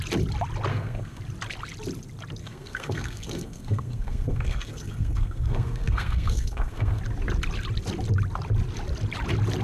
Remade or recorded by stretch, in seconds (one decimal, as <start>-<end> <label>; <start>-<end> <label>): 0.0-0.7 recorded; 0.7-1.2 remade; 1.2-2.4 recorded; 2.4-7.0 remade; 7.0-9.6 recorded